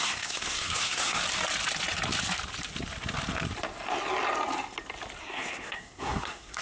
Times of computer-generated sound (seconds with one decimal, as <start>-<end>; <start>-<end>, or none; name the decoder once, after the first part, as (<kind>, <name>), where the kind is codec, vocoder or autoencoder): 0.0-1.2 (codec, SNAC); 5.2-6.6